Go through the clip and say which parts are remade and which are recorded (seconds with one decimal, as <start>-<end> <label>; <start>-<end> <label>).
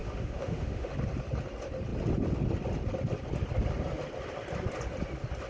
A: 0.0-0.9 remade; 0.9-5.5 recorded